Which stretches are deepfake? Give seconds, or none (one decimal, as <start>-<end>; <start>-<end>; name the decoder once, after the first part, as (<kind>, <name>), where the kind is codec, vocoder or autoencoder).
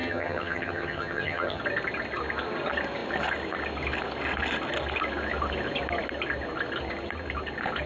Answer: 0.0-1.6 (vocoder, HiFi-GAN)